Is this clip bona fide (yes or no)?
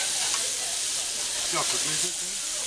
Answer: yes